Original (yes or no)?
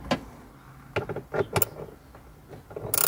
yes